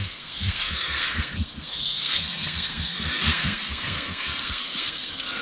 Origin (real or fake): fake